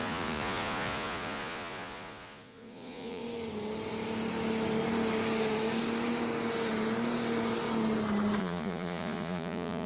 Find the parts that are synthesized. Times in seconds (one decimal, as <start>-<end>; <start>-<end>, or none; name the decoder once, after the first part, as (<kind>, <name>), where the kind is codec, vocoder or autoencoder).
0.0-3.2 (vocoder, Vocos); 8.4-9.9